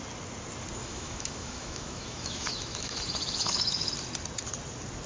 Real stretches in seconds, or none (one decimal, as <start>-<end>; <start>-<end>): 0.0-0.8; 3.9-5.1